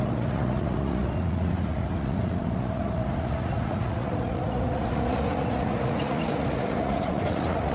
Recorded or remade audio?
remade